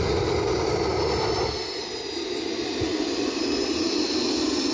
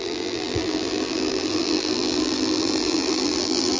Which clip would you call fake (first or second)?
second